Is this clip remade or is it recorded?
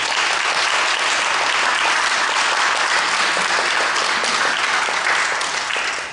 recorded